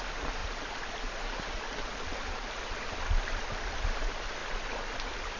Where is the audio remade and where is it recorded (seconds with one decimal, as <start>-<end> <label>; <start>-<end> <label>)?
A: 0.0-5.4 recorded